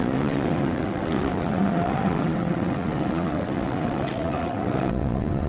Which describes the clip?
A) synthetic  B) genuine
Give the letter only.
A